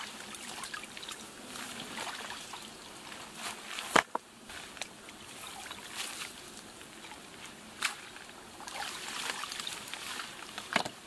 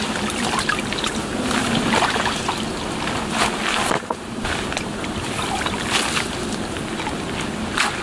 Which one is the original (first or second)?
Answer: second